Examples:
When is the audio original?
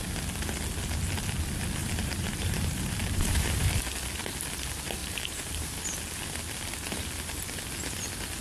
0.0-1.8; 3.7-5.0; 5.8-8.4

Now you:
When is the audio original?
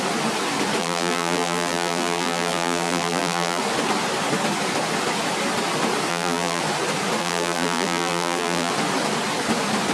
0.0-0.8; 3.6-6.1; 6.6-7.2; 8.7-9.9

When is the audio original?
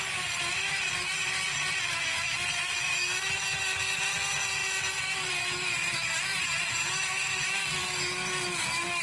0.0-6.3; 6.9-9.0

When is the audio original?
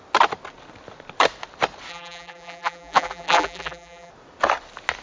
0.0-1.9; 4.1-5.0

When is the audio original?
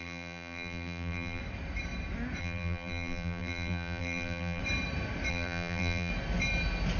1.4-2.4; 4.6-5.3; 6.1-7.0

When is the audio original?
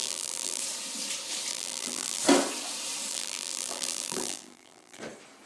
0.6-1.5; 2.2-3.1; 5.0-5.5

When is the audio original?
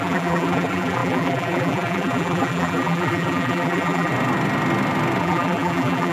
4.1-5.2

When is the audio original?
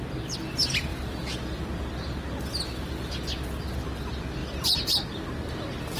0.0-0.9; 1.6-6.0